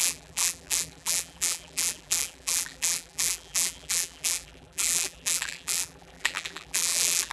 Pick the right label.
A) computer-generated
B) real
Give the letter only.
A